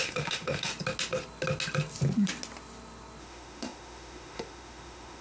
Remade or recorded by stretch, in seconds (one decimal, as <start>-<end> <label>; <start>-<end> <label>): 0.0-0.7 remade; 0.7-3.2 recorded; 3.2-5.2 remade